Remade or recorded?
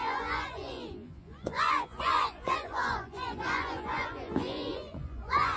remade